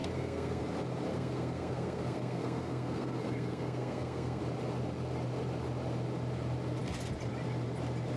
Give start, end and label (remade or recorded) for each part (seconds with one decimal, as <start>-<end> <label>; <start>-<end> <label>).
0.0-0.6 remade; 0.6-1.1 recorded; 1.1-4.4 remade; 4.4-8.2 recorded